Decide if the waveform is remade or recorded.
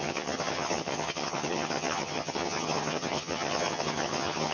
remade